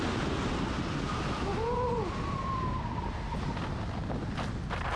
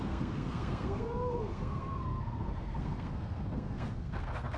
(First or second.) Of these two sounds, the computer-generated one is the second